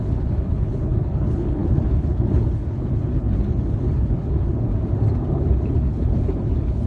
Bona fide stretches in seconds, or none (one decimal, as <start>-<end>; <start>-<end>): 4.7-5.3